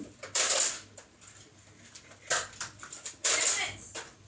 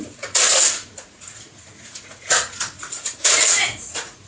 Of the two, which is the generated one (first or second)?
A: second